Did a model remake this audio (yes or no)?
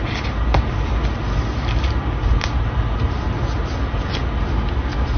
no